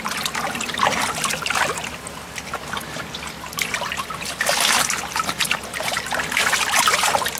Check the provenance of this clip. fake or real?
real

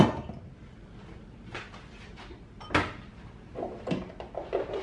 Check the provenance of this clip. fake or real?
real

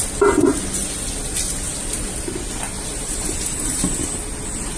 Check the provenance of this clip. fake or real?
real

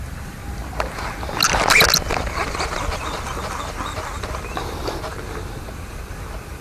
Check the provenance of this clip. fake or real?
real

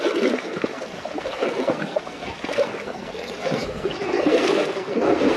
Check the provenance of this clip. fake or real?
fake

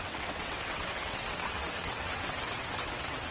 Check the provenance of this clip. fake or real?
fake